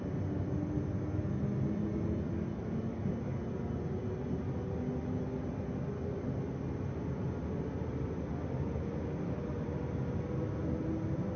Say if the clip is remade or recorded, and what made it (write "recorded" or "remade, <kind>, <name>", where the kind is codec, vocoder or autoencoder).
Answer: recorded